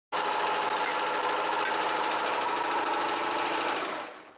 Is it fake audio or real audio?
real